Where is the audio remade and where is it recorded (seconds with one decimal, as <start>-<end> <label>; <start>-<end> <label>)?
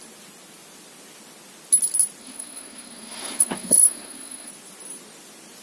0.0-2.2 recorded; 2.2-4.5 remade; 4.5-5.6 recorded